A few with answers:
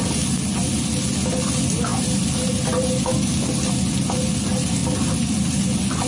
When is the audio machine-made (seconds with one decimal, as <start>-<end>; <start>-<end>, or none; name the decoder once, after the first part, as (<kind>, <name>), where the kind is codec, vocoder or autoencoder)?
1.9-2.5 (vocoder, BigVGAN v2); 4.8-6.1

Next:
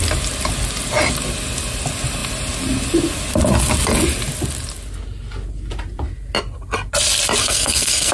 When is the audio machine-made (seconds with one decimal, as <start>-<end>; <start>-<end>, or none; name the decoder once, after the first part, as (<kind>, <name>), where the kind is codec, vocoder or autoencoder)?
7.4-8.1 (codec, SNAC)

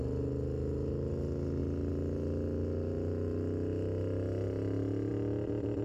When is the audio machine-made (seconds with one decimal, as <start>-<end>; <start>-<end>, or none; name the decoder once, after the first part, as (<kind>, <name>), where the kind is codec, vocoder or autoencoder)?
none

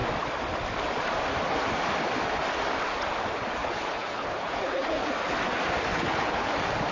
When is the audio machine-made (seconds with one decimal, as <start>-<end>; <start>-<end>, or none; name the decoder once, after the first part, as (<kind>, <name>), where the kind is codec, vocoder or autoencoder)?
3.6-5.1 (codec, HILCodec); 5.9-6.5